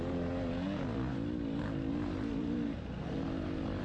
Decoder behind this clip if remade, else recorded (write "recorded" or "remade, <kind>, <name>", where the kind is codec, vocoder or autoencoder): recorded